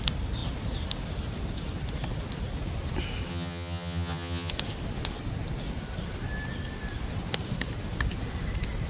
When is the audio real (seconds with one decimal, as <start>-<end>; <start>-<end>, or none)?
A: 0.0-3.3; 4.5-8.9